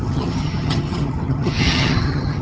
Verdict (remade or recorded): remade